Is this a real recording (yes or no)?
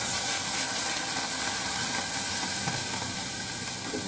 yes